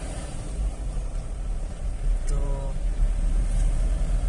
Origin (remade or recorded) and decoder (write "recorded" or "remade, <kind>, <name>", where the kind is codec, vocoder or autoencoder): remade, vocoder, BigVGAN v2